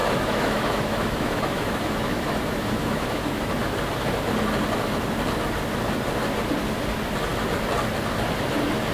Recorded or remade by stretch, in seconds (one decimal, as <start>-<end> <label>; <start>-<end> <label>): 0.0-3.5 remade; 3.5-8.9 recorded